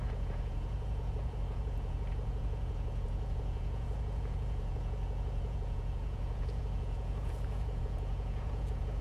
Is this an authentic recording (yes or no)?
no